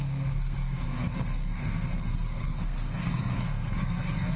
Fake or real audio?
fake